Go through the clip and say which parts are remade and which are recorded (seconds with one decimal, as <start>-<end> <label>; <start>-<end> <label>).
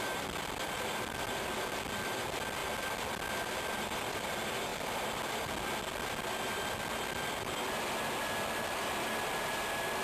0.0-10.0 recorded